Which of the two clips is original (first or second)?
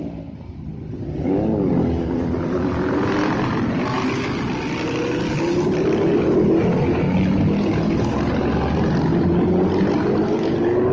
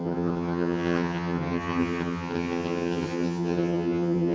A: first